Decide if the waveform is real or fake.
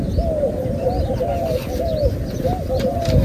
real